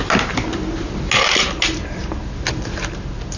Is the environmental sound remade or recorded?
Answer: recorded